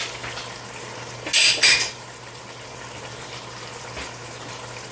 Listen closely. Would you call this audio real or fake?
real